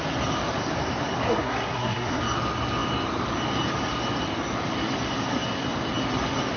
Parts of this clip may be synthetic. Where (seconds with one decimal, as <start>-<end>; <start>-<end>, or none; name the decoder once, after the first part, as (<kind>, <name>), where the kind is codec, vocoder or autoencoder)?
1.3-2.2 (codec, SNAC)